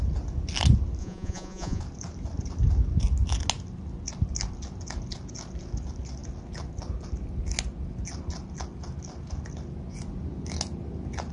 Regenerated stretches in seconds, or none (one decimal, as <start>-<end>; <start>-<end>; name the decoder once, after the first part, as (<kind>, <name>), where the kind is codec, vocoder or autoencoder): 1.0-1.8 (vocoder, Vocos)